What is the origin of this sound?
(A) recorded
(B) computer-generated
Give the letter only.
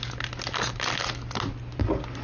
A